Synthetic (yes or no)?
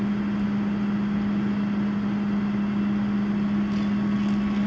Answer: no